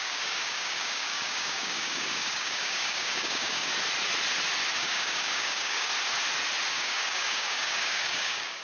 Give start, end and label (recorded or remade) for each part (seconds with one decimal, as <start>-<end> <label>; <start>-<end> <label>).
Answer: 0.0-3.7 remade; 3.7-4.8 recorded; 4.8-5.9 remade; 5.9-6.7 recorded; 6.7-8.6 remade